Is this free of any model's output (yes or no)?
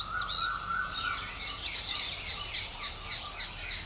yes